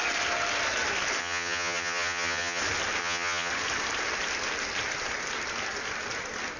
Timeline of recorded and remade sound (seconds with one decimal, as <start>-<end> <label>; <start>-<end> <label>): 0.0-1.2 recorded; 1.2-2.6 remade; 2.6-3.0 recorded; 3.0-3.5 remade; 3.5-6.6 recorded